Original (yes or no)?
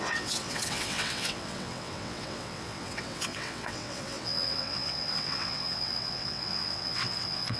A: no